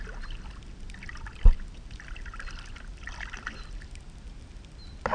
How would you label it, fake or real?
real